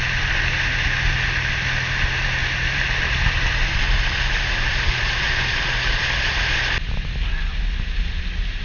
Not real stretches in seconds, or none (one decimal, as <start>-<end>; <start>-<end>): 2.4-6.6